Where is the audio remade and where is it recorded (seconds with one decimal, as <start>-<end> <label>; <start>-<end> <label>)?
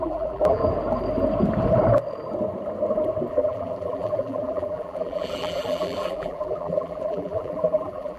0.0-0.6 remade; 0.6-3.3 recorded; 3.3-8.2 remade